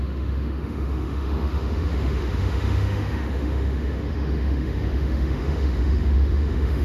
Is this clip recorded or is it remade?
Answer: remade